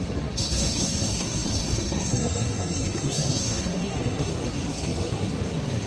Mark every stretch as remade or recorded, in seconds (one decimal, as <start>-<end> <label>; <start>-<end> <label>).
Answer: 0.0-5.9 remade

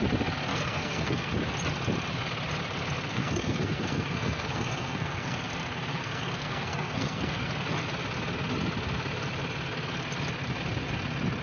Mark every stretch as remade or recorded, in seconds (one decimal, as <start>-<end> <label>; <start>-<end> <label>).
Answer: 0.0-0.5 recorded; 0.5-1.3 remade; 1.3-3.1 recorded; 3.1-5.5 remade; 5.5-5.9 recorded; 5.9-7.5 remade; 7.5-11.4 recorded

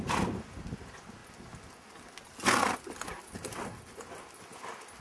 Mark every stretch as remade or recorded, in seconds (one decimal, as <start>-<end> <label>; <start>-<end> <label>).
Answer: 0.0-5.0 recorded

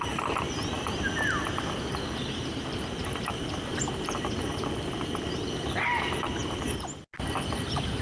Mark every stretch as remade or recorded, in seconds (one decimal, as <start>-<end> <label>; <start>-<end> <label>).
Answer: 0.0-2.4 recorded; 2.4-4.3 remade; 4.3-8.0 recorded

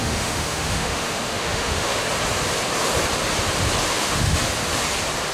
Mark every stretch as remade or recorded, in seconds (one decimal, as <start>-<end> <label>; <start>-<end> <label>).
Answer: 0.0-2.0 remade; 2.0-3.8 recorded; 3.8-4.4 remade; 4.4-5.3 recorded